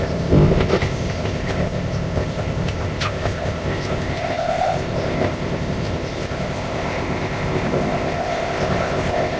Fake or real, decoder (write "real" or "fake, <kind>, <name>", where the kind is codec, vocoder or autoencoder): fake, codec, ZipCodec